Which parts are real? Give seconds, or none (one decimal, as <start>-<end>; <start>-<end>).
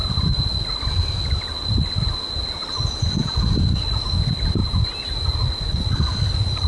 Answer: 0.0-6.7